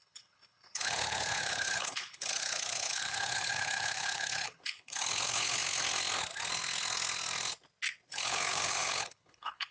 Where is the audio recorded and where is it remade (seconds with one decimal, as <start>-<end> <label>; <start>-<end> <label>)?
0.0-5.6 remade; 5.6-8.1 recorded; 8.1-9.7 remade